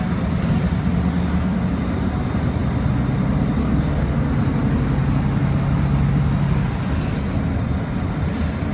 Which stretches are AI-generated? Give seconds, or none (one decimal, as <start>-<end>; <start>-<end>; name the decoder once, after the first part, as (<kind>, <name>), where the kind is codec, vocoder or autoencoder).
3.6-4.1 (codec, DAC)